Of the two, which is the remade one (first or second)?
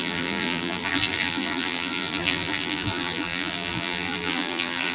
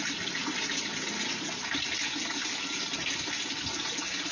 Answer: first